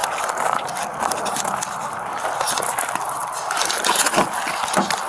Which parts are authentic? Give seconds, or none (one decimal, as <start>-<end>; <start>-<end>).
0.0-5.1